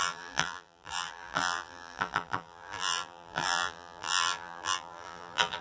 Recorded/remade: remade